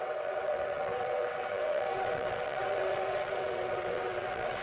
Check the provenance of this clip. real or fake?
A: fake